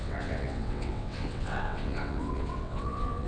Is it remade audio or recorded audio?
remade